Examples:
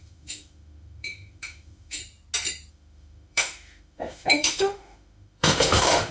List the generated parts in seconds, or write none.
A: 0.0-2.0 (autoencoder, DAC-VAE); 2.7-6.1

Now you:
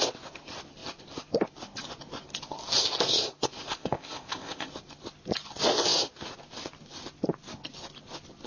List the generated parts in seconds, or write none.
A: 3.7-4.7 (codec, ZipCodec)

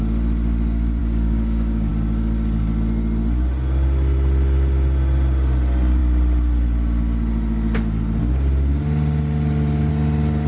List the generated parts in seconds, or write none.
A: 1.0-1.9 (codec, DAC)

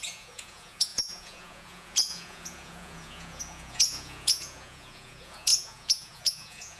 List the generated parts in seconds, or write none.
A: 0.0-6.8 (vocoder, Vocos)

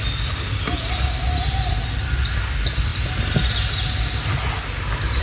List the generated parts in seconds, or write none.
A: none